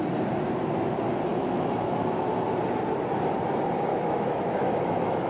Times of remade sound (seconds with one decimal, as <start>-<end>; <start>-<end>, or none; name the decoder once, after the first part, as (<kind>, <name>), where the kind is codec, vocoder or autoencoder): 1.3-2.3 (autoencoder, DAC-VAE); 3.9-5.3